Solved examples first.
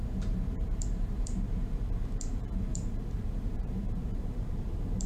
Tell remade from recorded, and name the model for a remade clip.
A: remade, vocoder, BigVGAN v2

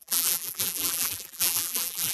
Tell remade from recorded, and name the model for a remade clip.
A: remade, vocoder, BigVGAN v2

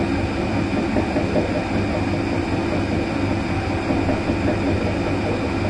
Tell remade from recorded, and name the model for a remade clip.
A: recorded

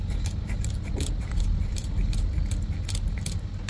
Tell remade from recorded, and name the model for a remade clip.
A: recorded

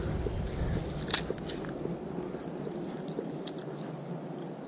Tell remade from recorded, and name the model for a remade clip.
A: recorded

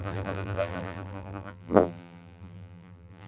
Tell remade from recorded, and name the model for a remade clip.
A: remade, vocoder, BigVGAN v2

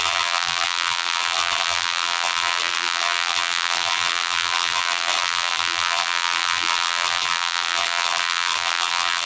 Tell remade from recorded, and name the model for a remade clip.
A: remade, vocoder, BigVGAN v2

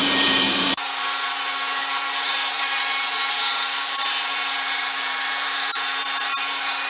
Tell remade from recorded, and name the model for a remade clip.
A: remade, vocoder, BigVGAN v2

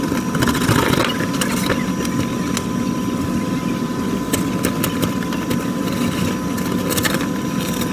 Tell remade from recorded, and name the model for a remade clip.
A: recorded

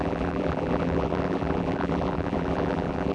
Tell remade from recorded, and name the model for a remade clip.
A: remade, vocoder, BigVGAN v2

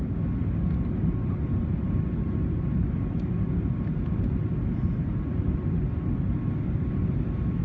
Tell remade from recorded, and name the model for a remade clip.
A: remade, vocoder, BigVGAN v2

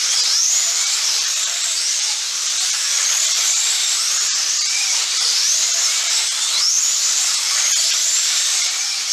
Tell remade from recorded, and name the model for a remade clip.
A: remade, vocoder, BigVGAN v2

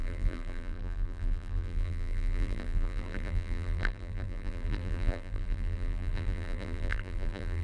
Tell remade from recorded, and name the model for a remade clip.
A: remade, vocoder, BigVGAN v2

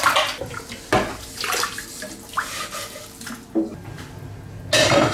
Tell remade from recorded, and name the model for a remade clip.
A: recorded